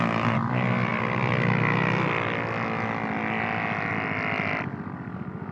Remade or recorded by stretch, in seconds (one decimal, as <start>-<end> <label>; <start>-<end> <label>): 0.0-5.5 recorded